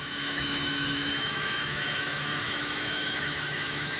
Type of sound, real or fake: fake